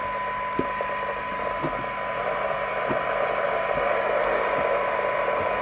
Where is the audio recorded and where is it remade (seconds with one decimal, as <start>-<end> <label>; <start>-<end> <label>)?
0.0-5.6 recorded

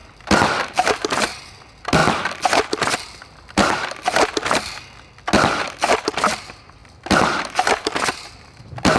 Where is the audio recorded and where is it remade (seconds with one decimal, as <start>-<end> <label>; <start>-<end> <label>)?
0.0-0.9 recorded; 0.9-2.0 remade; 2.0-5.9 recorded; 5.9-9.0 remade